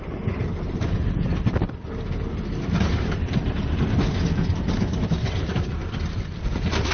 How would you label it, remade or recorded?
remade